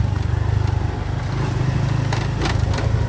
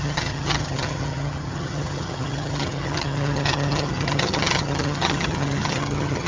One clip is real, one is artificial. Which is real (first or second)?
first